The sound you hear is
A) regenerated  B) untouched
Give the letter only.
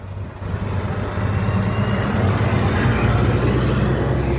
B